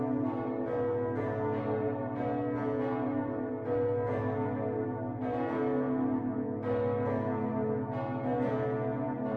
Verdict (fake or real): real